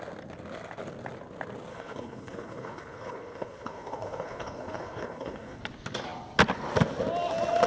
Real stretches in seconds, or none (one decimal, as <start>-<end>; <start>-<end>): 0.0-1.7; 5.6-7.7